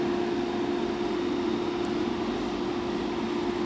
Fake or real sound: real